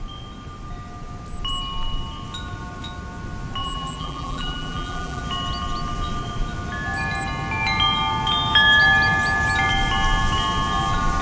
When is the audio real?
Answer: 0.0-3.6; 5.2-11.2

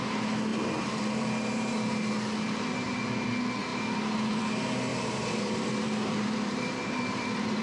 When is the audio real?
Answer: 0.0-0.5; 2.0-3.7; 4.4-4.9

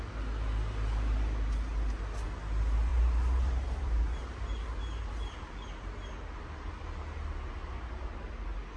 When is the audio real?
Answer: 0.0-2.9; 7.0-8.8

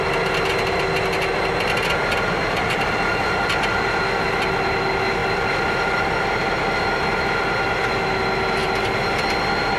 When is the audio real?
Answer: 0.0-2.6; 4.0-8.6

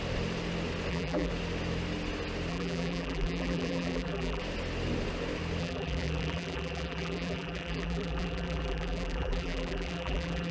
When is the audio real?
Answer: 0.0-0.9; 1.3-2.5; 4.4-5.6

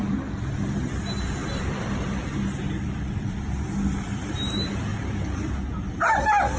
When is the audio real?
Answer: 0.0-1.4; 4.3-4.9; 6.0-6.6

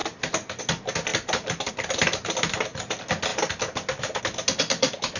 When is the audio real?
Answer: 0.6-1.1; 1.7-5.2

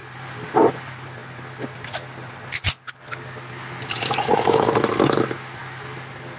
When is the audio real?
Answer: 0.5-6.4